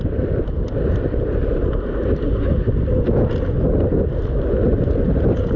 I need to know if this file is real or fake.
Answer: real